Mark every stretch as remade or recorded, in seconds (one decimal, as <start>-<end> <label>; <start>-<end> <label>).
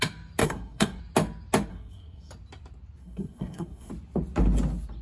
0.0-0.4 recorded; 0.4-1.0 remade; 1.0-1.7 recorded; 1.7-2.3 remade; 2.3-3.0 recorded; 3.0-3.9 remade; 3.9-5.0 recorded